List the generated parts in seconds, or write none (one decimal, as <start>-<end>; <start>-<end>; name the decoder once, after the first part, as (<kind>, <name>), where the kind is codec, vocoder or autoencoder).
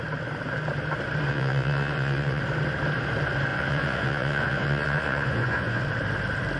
1.3-2.4 (vocoder, Vocos); 3.5-5.8